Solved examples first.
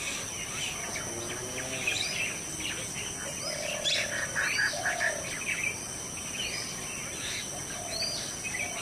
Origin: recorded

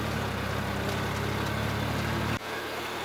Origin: recorded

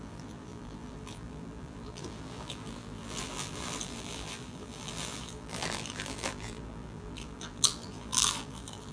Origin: remade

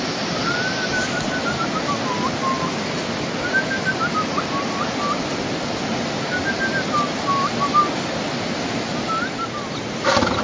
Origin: recorded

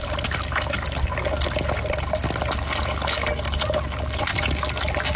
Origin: recorded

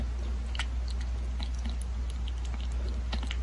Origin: recorded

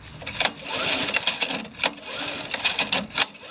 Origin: recorded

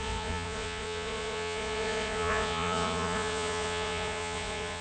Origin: remade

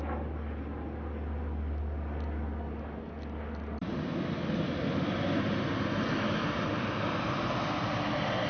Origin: recorded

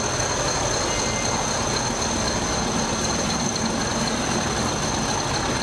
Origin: recorded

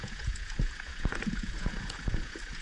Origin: remade